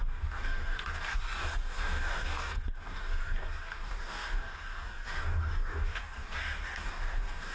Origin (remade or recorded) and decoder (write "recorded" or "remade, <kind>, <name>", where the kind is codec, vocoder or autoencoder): remade, codec, DAC